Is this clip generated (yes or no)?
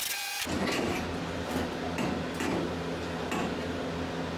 no